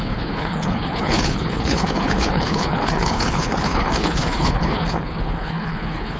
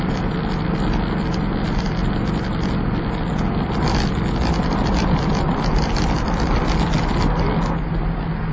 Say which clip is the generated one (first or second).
first